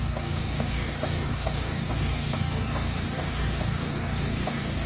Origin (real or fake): fake